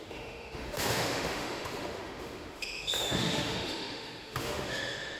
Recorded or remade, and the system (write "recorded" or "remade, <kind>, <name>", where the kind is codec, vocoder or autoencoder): remade, autoencoder, DAC-VAE